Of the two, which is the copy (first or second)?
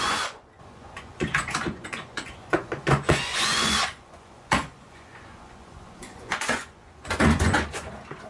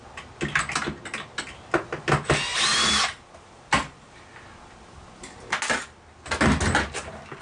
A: first